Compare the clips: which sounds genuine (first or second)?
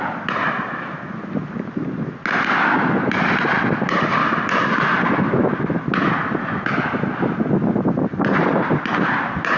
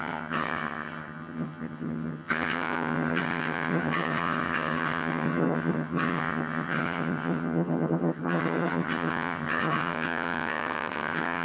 first